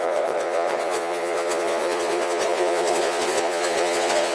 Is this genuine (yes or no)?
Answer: no